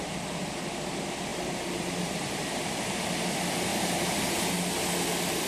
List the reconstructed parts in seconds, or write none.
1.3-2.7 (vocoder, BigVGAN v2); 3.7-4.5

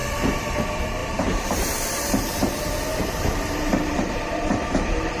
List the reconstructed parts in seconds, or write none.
0.0-5.2 (vocoder, BigVGAN v2)

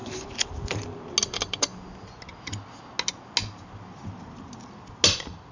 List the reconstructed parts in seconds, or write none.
0.0-1.0 (vocoder, BigVGAN v2)

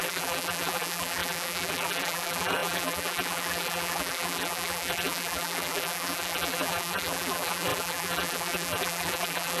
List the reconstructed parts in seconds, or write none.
0.0-9.6 (vocoder, BigVGAN v2)

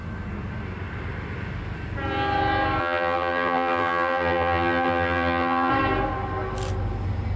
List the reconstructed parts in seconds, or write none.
2.8-5.7 (vocoder, BigVGAN v2)

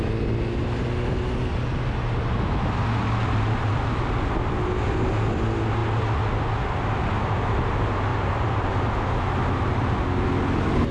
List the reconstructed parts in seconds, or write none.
3.2-4.0 (vocoder, BigVGAN v2); 8.1-8.7

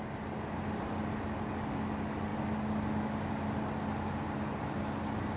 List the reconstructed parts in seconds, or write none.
none